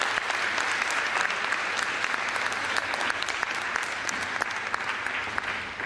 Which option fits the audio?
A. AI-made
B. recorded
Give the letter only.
B